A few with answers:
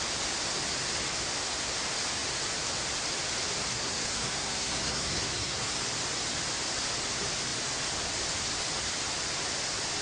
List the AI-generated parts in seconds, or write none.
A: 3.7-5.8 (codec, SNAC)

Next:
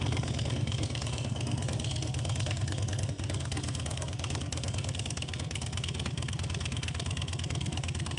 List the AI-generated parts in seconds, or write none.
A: 0.0-8.2 (codec, SNAC)

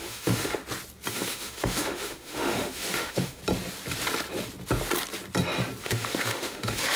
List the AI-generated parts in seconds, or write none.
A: 0.0-0.6 (autoencoder, DAC-VAE); 1.1-3.4; 5.8-7.0

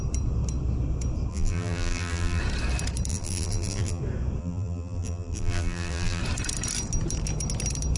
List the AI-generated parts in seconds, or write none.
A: 1.3-2.4 (vocoder, BigVGAN v2); 3.1-4.0; 4.4-6.2

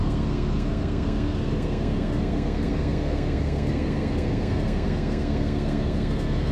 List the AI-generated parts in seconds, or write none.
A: 0.0-6.5 (codec, SNAC)

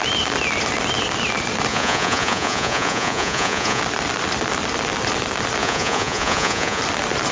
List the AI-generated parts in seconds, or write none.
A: 1.7-3.8 (vocoder, Vocos); 5.6-6.8

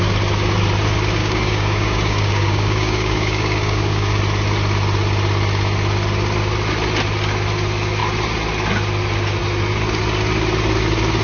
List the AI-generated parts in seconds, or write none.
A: 1.2-4.2 (codec, DAC)